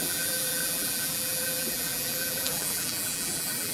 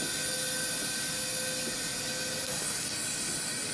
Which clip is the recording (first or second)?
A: second